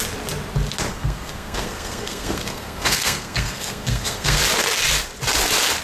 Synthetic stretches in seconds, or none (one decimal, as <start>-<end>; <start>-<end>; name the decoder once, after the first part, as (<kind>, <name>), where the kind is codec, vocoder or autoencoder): 0.9-4.4 (codec, SNAC)